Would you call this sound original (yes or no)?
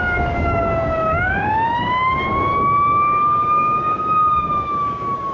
no